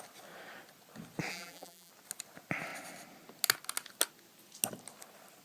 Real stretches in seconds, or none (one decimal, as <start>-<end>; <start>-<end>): 0.0-1.3; 1.9-5.4